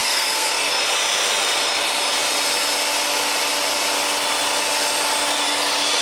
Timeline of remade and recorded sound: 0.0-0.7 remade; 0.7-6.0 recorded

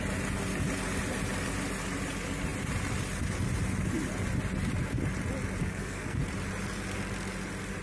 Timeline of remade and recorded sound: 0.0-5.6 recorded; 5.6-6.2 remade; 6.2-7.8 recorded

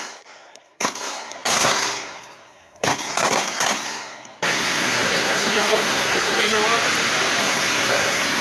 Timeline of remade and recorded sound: 0.0-6.6 remade; 6.6-7.4 recorded; 7.4-8.4 remade

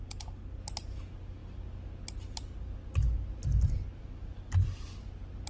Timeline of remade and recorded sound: 0.0-5.5 recorded

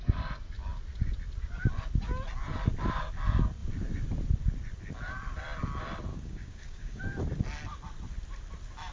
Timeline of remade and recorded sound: 0.0-6.1 recorded; 6.1-7.0 remade; 7.0-8.9 recorded